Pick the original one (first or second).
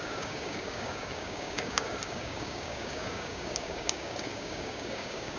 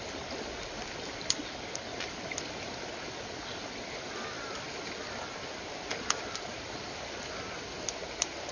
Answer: second